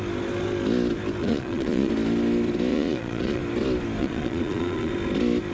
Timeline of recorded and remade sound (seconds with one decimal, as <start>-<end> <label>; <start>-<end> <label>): 0.0-1.2 recorded; 1.2-1.9 remade; 1.9-2.7 recorded; 2.7-3.4 remade; 3.4-4.0 recorded; 4.0-4.9 remade; 4.9-5.5 recorded